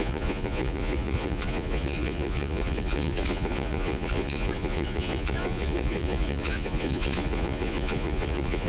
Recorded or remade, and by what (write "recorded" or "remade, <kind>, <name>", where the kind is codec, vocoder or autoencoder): remade, vocoder, Vocos